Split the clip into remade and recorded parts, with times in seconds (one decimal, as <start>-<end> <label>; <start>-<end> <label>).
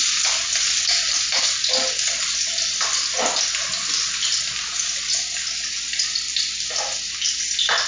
0.0-7.9 recorded